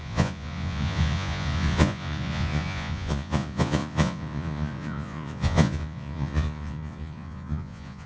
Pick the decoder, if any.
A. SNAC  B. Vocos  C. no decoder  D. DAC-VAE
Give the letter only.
B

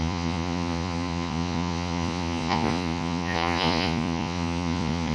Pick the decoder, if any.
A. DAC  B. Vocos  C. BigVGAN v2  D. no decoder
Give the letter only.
B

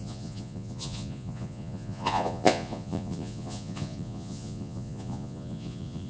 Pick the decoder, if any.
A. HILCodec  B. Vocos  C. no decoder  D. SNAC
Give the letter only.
B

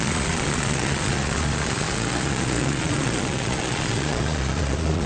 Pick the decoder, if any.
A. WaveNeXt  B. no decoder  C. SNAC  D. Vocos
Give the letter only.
D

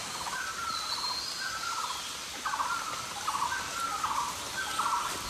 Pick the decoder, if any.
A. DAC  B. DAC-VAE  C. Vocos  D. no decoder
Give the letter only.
D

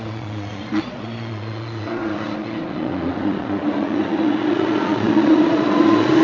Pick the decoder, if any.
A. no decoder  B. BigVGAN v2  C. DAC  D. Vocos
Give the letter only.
D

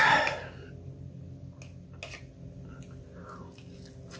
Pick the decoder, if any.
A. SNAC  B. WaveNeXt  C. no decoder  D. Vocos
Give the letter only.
C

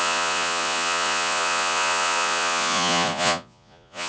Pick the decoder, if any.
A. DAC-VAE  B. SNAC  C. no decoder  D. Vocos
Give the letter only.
D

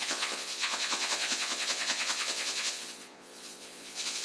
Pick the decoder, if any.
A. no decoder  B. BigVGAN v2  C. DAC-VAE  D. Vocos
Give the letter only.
D